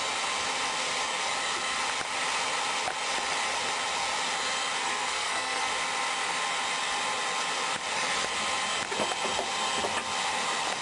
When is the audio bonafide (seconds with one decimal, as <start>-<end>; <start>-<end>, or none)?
0.0-4.8; 5.7-10.8